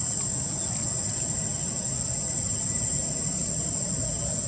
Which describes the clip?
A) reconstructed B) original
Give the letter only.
B